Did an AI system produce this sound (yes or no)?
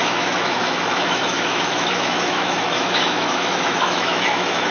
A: yes